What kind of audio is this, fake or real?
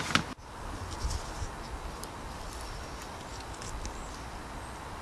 real